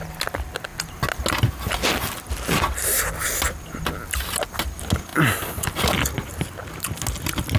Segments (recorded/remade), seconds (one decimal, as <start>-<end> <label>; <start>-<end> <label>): 0.0-7.6 recorded

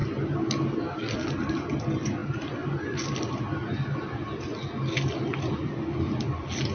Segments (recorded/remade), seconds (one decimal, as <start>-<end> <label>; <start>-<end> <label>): 0.0-6.7 recorded

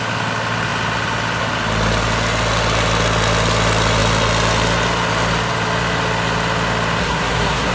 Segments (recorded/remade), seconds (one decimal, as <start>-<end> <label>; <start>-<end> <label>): 0.0-7.0 recorded; 7.0-7.7 remade

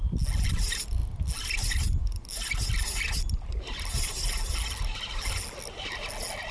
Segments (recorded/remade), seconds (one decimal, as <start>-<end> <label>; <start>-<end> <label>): 0.0-6.5 recorded

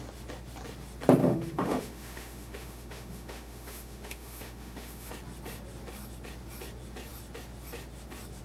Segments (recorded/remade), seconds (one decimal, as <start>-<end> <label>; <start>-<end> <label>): 0.0-1.2 recorded; 1.2-5.1 remade; 5.1-8.4 recorded

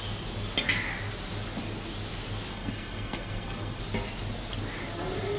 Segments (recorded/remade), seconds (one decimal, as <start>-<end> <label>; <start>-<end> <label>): 0.0-2.5 recorded; 2.5-3.8 remade; 3.8-5.4 recorded

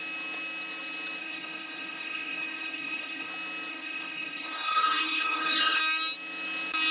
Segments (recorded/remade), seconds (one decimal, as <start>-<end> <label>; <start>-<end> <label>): 0.0-1.2 recorded; 1.2-3.3 remade; 3.3-3.7 recorded; 3.7-5.8 remade; 5.8-6.9 recorded

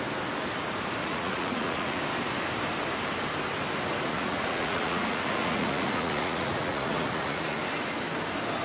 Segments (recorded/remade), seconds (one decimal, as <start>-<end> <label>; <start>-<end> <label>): 0.0-1.0 recorded; 1.0-2.0 remade; 2.0-4.1 recorded; 4.1-7.6 remade; 7.6-8.6 recorded